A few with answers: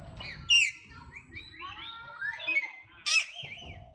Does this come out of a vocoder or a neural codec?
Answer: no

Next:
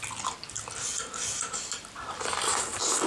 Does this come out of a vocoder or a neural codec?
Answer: no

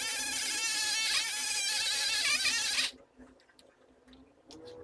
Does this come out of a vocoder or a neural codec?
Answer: no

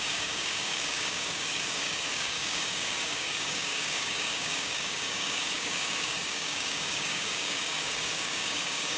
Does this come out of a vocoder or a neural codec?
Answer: yes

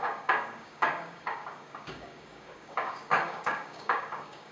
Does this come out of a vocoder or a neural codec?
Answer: yes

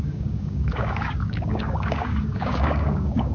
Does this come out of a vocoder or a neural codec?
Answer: yes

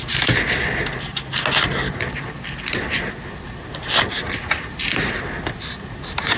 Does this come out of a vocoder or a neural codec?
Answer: no